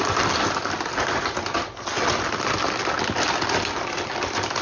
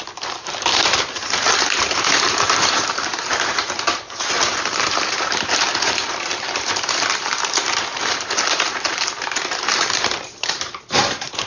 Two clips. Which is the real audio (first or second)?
first